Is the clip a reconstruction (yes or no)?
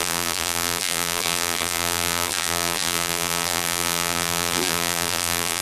yes